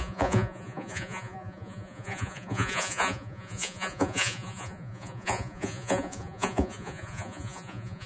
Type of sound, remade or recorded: remade